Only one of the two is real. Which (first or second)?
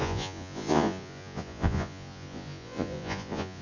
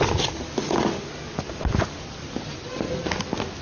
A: second